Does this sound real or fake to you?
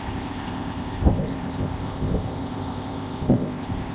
fake